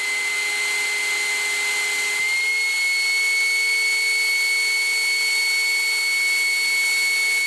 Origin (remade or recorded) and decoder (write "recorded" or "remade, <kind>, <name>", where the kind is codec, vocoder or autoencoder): recorded